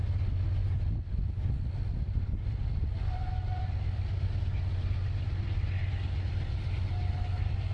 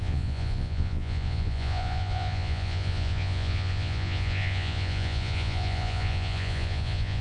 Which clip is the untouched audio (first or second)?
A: first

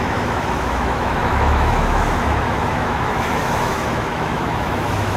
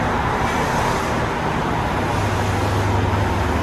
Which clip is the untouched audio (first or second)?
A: second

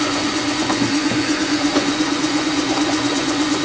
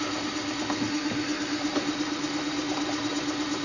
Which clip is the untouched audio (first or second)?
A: second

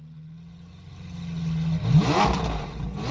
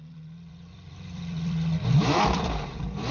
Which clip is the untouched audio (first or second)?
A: first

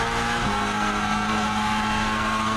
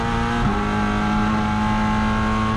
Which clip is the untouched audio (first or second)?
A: second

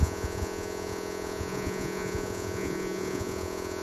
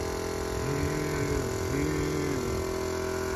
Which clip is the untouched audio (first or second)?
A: second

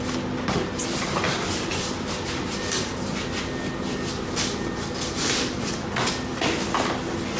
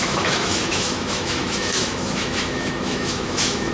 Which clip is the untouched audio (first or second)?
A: first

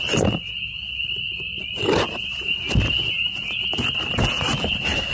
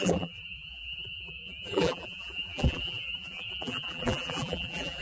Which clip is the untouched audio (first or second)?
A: first